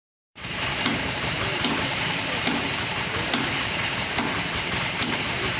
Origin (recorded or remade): remade